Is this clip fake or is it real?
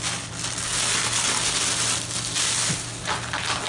real